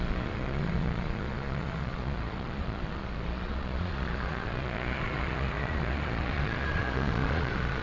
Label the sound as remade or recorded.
remade